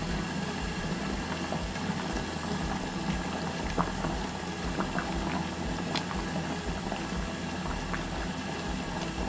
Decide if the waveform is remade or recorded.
recorded